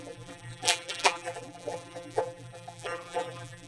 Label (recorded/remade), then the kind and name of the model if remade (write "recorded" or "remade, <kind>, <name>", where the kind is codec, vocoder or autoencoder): remade, vocoder, BigVGAN v2